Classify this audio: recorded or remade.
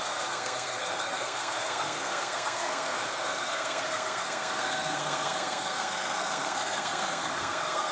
remade